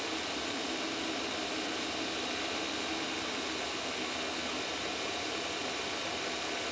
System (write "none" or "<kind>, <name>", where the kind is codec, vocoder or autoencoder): none